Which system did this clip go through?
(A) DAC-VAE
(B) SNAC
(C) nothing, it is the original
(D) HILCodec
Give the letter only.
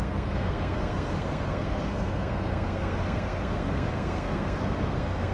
B